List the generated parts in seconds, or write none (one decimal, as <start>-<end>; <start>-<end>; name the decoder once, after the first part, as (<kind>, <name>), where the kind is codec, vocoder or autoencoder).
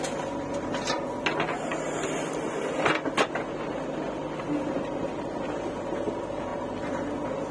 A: none